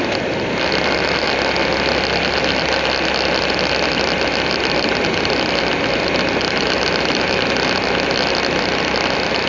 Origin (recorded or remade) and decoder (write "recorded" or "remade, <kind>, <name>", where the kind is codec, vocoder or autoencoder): recorded